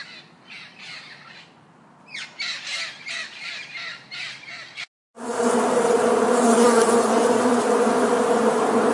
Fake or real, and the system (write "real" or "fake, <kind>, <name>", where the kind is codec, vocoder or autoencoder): real